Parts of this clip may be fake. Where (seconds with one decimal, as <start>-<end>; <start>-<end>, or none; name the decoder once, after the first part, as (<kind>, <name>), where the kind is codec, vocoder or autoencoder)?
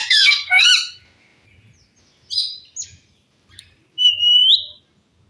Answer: 0.0-0.7 (codec, SNAC)